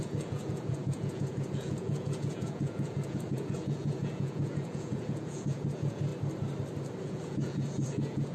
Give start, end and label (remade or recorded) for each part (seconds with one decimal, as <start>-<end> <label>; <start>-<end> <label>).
0.0-6.1 remade; 6.1-7.0 recorded; 7.0-8.3 remade